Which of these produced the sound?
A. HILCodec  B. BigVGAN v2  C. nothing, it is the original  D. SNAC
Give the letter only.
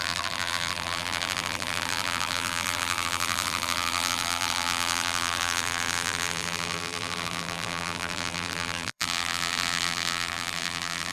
B